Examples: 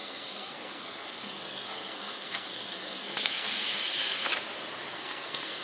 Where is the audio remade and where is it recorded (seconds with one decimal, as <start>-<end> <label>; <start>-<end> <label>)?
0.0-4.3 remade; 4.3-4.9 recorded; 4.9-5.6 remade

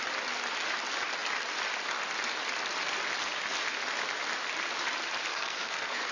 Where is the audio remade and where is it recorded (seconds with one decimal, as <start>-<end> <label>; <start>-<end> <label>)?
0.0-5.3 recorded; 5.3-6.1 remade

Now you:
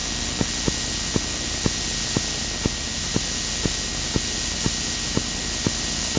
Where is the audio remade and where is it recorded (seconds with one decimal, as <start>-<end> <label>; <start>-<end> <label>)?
0.0-6.2 recorded

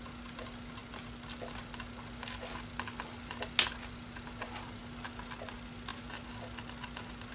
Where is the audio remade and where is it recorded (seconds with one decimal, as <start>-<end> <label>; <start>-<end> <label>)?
0.0-7.3 recorded